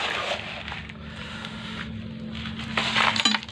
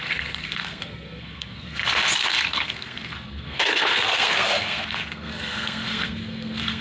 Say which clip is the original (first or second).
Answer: first